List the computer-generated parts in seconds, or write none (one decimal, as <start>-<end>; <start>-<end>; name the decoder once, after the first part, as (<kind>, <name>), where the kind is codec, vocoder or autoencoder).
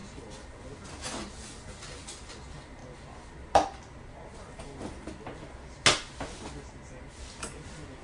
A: none